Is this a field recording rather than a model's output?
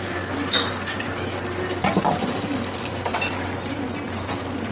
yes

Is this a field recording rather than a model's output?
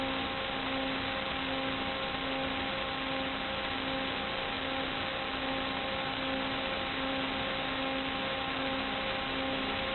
yes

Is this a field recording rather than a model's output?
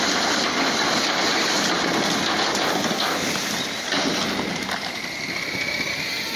yes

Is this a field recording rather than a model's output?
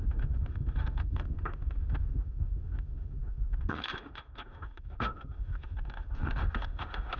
no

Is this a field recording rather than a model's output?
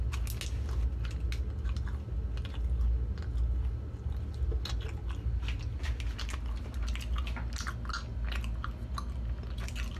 yes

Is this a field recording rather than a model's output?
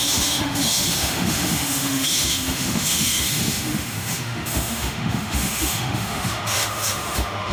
no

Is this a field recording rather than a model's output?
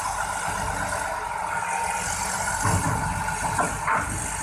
yes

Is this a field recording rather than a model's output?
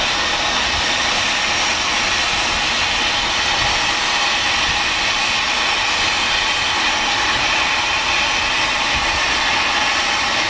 yes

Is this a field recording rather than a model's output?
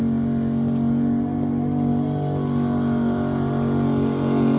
yes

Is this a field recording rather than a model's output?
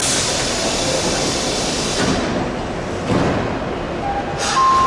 yes